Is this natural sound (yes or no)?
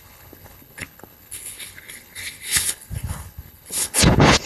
no